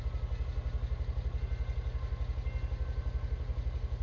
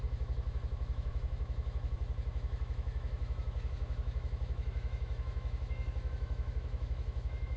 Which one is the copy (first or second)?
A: second